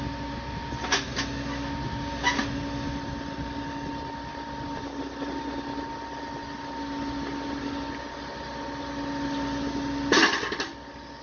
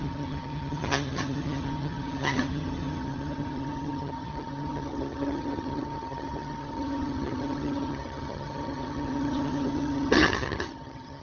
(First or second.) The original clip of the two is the first